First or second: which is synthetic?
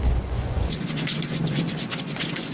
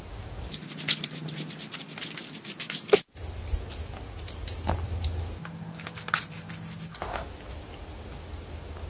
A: first